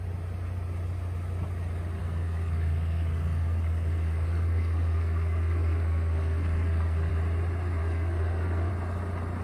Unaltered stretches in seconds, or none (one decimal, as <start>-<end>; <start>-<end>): 0.0-2.0; 7.1-7.8; 8.7-9.4